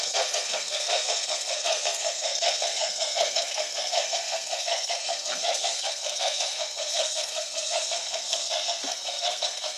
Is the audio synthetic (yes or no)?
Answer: yes